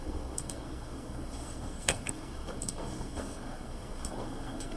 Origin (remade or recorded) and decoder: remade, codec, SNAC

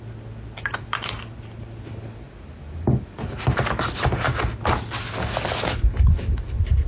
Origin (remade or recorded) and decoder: recorded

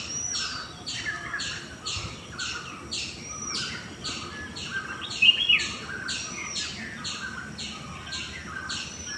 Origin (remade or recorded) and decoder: recorded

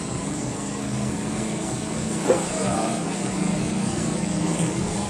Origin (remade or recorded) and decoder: remade, codec, SNAC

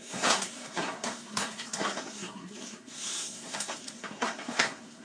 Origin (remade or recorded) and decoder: remade, codec, SNAC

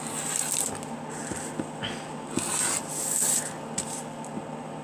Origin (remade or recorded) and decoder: recorded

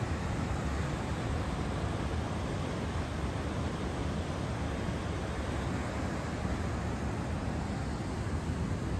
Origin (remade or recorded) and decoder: recorded